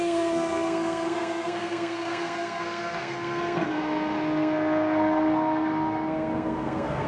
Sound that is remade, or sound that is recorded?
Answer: remade